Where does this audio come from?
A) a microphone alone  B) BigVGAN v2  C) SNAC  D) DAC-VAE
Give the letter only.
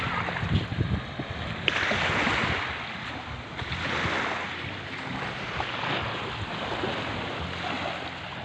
A